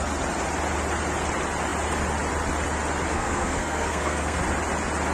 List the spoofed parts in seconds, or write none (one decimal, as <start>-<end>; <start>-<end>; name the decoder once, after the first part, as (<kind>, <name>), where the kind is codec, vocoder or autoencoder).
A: 3.1-4.4 (codec, SNAC)